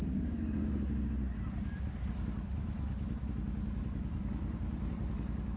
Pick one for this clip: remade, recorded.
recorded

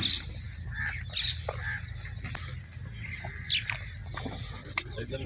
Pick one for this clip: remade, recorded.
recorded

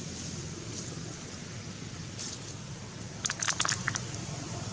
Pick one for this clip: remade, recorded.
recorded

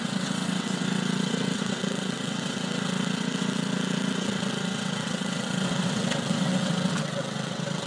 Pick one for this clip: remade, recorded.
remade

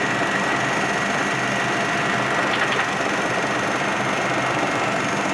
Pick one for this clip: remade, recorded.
recorded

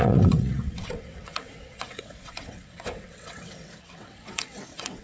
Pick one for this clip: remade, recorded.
remade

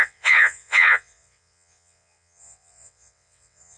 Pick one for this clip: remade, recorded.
remade